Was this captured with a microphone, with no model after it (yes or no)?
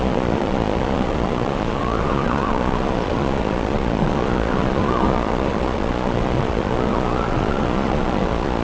no